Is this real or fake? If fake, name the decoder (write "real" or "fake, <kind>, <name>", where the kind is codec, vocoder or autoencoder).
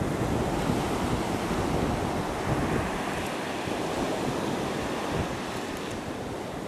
real